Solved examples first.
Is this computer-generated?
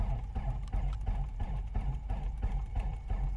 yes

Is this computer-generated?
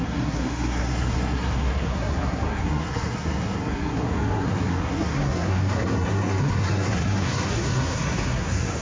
yes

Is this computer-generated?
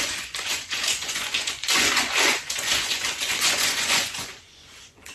yes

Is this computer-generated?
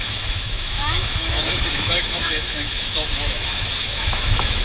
yes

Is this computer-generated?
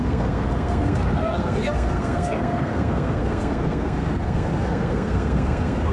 yes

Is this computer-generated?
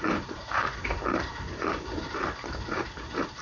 yes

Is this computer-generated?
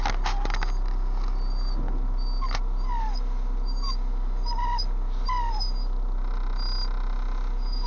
no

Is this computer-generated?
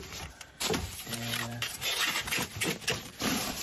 yes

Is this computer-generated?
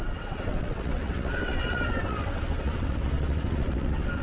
yes